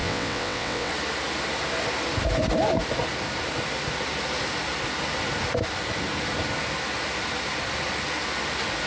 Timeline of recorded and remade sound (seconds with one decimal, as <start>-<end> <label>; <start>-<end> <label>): 0.0-0.9 remade; 0.9-8.9 recorded